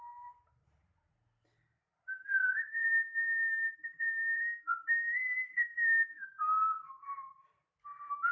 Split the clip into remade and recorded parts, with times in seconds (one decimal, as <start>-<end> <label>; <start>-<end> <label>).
0.0-2.4 recorded; 2.4-7.1 remade; 7.1-8.3 recorded